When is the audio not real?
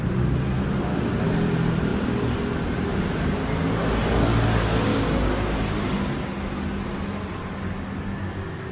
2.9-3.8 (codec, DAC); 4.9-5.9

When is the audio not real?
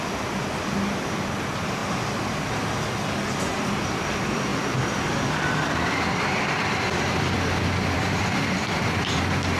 0.0-1.8 (vocoder, BigVGAN v2); 3.6-4.5; 5.1-9.6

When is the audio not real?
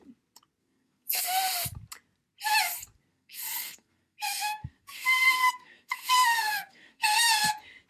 0.6-1.2 (codec, SNAC); 3.1-7.5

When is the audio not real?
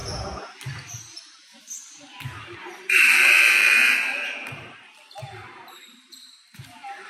2.6-7.1 (vocoder, BigVGAN v2)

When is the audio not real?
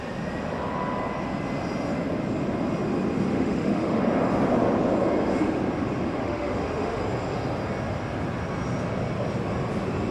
3.3-4.0 (autoencoder, DAC-VAE); 6.2-7.0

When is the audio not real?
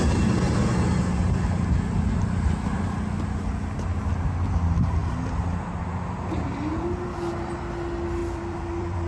5.0-5.9 (vocoder, BigVGAN v2); 8.2-9.1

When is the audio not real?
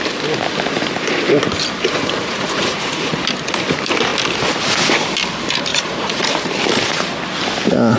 2.2-3.1 (vocoder, Vocos); 5.7-6.3